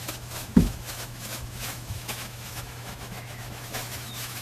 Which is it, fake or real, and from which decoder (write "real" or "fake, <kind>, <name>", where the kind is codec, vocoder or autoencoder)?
fake, autoencoder, DAC-VAE